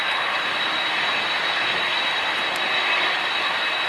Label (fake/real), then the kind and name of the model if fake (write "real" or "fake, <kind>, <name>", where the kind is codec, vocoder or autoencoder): real